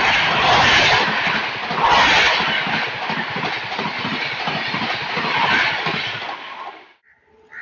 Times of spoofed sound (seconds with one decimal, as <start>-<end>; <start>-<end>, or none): 0.0-7.6